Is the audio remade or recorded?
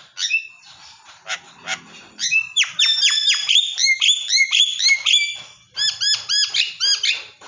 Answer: remade